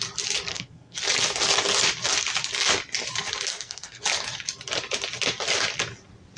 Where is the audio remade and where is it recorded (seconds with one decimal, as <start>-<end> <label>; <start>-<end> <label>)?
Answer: 0.0-0.5 recorded; 0.5-1.0 remade; 1.0-3.5 recorded; 3.5-4.0 remade; 4.0-6.4 recorded

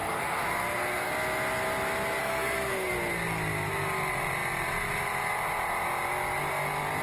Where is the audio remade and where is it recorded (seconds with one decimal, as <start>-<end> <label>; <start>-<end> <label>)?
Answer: 0.0-1.1 remade; 1.1-2.2 recorded; 2.2-2.9 remade; 2.9-7.0 recorded

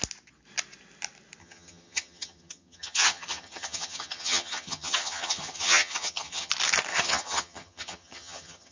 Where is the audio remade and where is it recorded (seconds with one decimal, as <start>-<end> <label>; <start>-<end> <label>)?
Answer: 0.0-1.4 recorded; 1.4-6.5 remade; 6.5-6.9 recorded; 6.9-8.7 remade

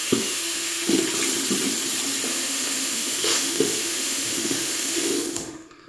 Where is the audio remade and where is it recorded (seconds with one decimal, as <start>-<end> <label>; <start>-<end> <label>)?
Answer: 0.0-1.0 remade; 1.0-2.3 recorded; 2.3-5.9 remade

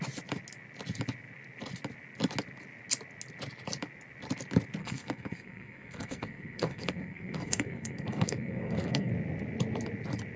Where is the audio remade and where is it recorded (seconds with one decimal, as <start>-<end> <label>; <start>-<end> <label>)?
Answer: 0.0-4.8 recorded; 4.8-9.1 remade; 9.1-10.4 recorded

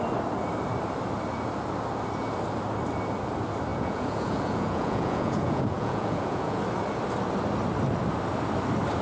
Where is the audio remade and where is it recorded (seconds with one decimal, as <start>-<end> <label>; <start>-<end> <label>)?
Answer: 0.0-3.7 recorded; 3.7-6.6 remade; 6.6-9.0 recorded